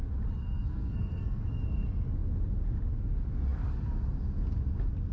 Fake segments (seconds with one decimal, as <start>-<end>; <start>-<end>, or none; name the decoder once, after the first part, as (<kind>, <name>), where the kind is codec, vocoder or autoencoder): 0.4-1.4 (codec, SNAC)